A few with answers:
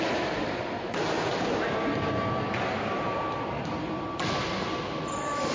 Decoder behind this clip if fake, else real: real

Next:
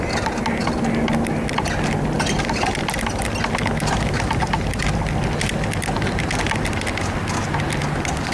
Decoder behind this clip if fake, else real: real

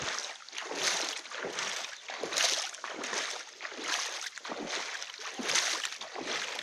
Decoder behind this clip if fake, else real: real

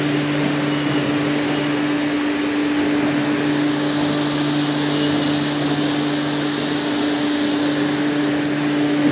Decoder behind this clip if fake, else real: real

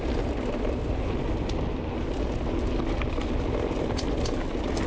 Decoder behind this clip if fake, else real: real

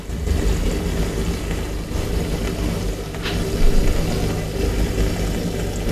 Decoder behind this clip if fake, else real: real